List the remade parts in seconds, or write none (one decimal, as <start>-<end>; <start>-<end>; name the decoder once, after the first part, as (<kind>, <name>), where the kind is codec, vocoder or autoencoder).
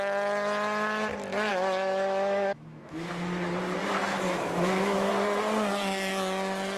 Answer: 1.5-3.1 (autoencoder, DAC-VAE); 4.0-5.1